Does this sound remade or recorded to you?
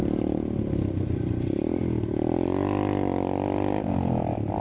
recorded